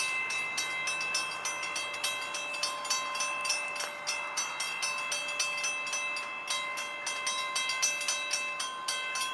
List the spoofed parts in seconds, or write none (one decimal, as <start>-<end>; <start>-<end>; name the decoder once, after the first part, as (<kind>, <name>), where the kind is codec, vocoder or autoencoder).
none